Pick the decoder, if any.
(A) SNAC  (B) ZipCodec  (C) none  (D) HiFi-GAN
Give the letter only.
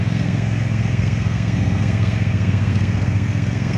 A